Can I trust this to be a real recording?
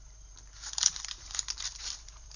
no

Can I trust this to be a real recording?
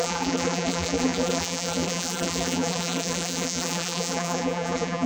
no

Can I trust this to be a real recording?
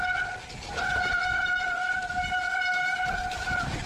yes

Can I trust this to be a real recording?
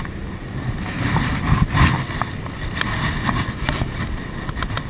yes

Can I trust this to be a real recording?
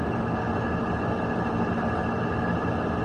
yes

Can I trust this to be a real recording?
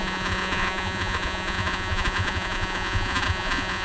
no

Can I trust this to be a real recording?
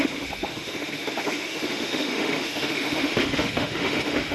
no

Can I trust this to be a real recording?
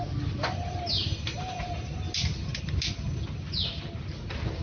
yes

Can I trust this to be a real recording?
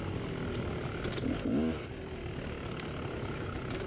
yes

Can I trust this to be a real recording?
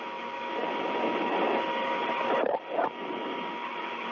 yes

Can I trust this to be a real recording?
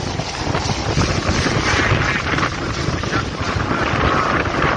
yes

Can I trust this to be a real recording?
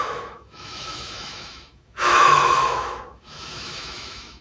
no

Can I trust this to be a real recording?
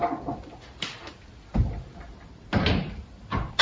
yes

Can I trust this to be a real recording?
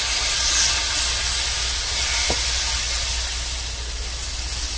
yes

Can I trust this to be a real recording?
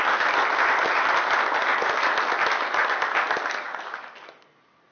yes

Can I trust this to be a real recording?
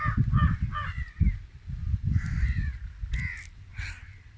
yes